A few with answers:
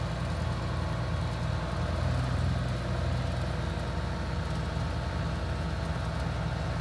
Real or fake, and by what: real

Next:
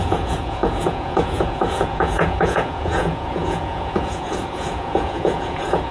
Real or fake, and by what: fake, vocoder, Vocos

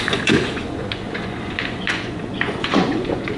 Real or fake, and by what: fake, vocoder, Vocos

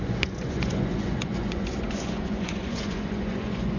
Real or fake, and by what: fake, vocoder, Vocos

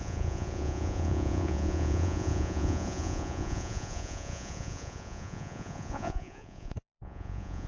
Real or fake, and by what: fake, vocoder, Vocos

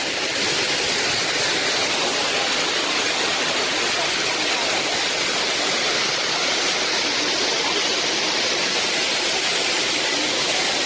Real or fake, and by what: real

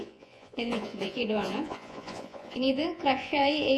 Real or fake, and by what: fake, vocoder, Vocos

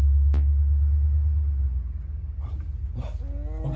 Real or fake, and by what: real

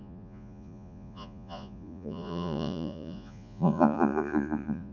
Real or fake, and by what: fake, vocoder, Vocos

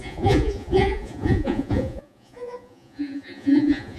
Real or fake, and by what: fake, vocoder, Vocos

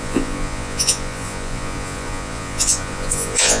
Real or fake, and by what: fake, vocoder, Vocos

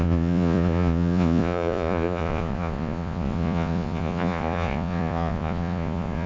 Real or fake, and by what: fake, vocoder, Vocos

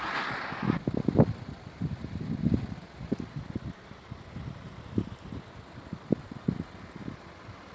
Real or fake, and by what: real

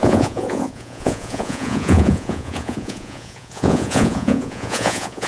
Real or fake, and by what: fake, vocoder, Vocos